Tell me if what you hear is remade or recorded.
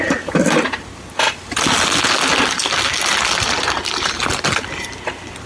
recorded